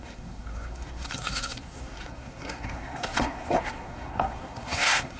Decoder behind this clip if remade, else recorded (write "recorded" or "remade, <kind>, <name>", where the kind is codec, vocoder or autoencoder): remade, codec, SNAC